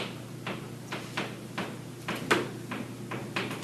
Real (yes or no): yes